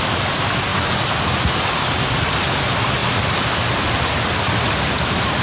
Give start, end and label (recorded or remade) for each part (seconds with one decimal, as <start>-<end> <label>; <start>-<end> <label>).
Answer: 0.0-5.4 recorded